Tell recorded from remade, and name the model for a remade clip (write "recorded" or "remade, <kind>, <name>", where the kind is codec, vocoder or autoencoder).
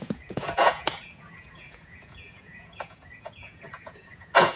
remade, vocoder, Vocos